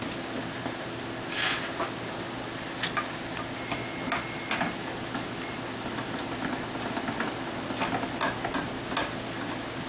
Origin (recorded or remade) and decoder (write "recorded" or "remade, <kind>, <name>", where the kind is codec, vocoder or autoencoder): recorded